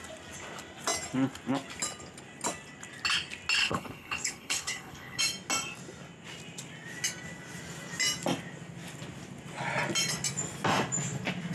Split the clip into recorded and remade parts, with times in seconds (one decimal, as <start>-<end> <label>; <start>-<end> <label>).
0.0-3.6 recorded; 3.6-5.2 remade; 5.2-11.5 recorded